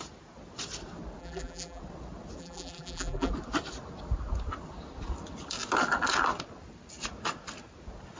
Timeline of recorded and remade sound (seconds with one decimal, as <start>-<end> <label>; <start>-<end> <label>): 0.0-1.2 recorded; 1.2-1.8 remade; 1.8-2.4 recorded; 2.4-3.3 remade; 3.3-8.2 recorded